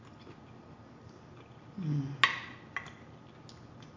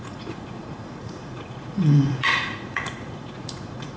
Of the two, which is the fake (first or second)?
second